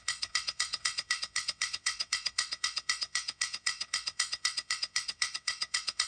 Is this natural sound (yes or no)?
no